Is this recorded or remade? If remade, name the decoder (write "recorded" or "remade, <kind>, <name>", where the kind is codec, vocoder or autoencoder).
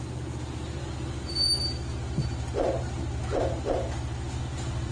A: recorded